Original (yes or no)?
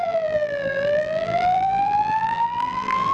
no